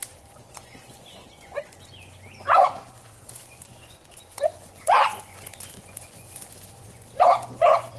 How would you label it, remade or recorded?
remade